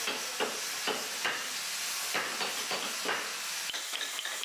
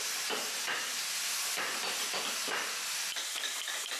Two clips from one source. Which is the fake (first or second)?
second